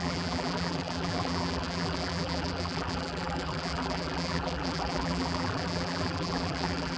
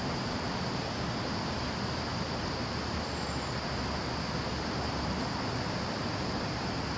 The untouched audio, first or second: second